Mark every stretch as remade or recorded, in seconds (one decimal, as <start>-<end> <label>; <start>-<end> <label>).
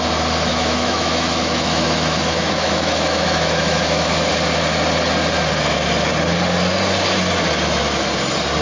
0.0-0.5 recorded; 0.5-4.3 remade; 4.3-8.6 recorded